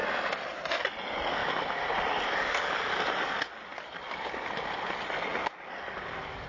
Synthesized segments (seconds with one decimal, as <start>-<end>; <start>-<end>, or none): 0.8-5.3; 5.9-6.5